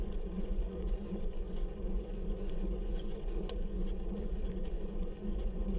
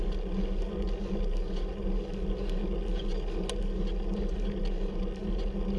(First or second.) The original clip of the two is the second